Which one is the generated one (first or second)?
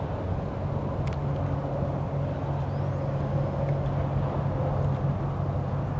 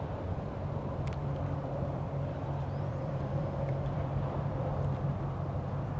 second